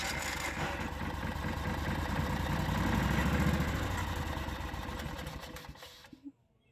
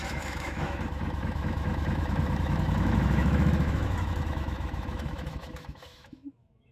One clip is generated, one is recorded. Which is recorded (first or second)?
first